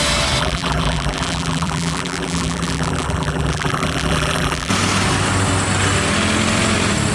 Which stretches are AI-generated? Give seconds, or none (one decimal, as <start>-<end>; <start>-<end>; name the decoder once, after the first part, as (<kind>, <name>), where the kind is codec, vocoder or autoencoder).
0.4-4.7 (vocoder, BigVGAN v2)